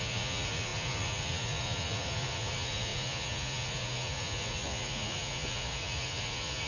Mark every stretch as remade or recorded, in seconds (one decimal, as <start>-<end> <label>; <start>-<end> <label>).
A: 0.0-6.7 remade